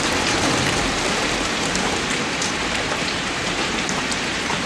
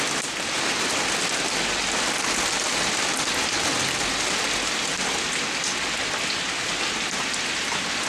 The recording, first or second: second